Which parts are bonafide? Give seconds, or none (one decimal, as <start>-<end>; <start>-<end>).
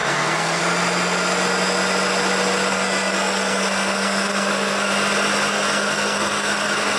0.6-2.7; 4.9-5.5